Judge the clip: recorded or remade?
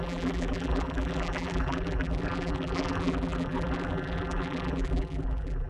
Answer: remade